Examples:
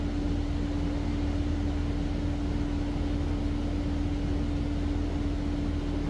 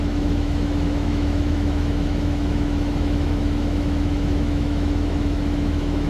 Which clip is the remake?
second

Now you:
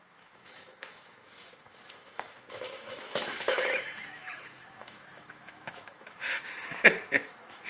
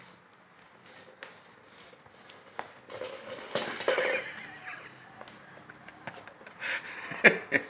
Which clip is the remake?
first